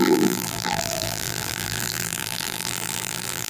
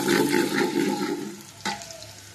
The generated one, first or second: first